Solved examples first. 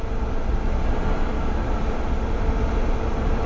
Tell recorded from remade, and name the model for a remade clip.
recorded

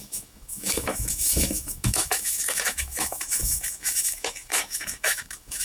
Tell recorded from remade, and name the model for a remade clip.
remade, autoencoder, DAC-VAE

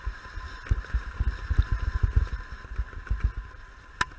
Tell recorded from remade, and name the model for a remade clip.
recorded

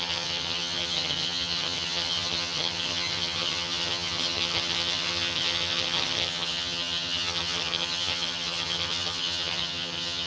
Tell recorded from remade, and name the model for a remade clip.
remade, vocoder, HiFi-GAN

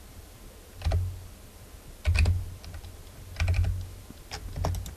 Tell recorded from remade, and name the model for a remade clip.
recorded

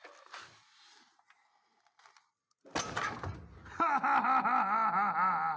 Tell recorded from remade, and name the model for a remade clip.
recorded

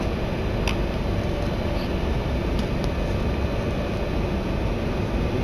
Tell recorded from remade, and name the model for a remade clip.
recorded